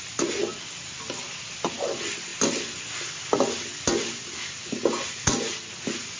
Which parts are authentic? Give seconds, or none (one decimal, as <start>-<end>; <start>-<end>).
0.0-6.2